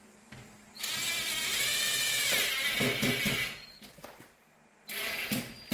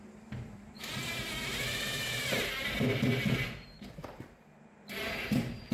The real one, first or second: first